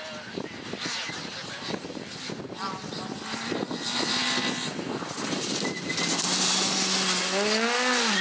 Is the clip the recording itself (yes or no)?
yes